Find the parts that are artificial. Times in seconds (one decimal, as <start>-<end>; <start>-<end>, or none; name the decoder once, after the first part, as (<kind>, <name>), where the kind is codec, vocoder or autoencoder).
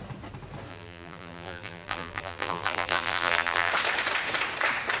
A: 0.7-3.7 (vocoder, BigVGAN v2)